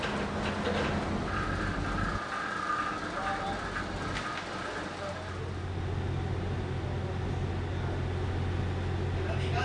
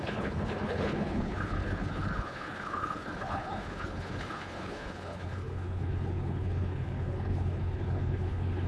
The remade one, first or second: second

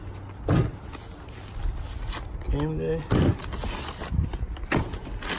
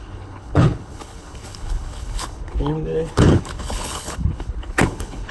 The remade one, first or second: second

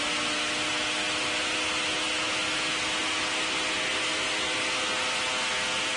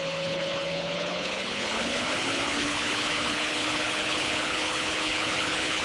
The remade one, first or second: second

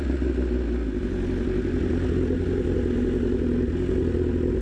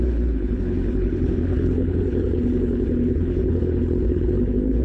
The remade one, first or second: second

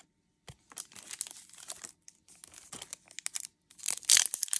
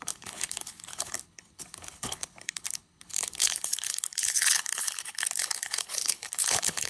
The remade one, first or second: second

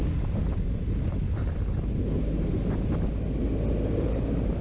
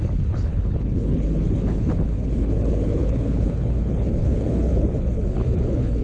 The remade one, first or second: second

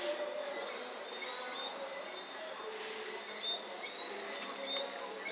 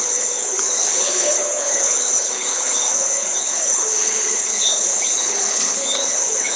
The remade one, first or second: second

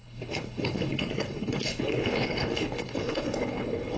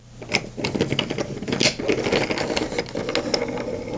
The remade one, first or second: first